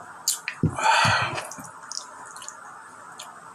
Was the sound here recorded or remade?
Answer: recorded